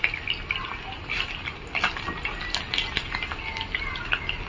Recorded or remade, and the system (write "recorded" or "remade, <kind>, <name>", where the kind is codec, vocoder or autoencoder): recorded